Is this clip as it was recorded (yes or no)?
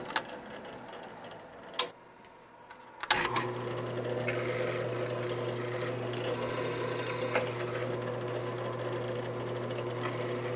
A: yes